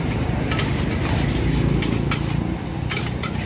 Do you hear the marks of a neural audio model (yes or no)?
no